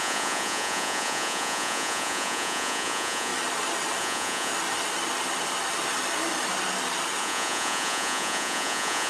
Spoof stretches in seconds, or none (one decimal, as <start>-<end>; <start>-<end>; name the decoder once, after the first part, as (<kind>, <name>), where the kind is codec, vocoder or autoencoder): 0.0-3.3 (vocoder, Vocos); 4.0-4.5; 7.2-9.1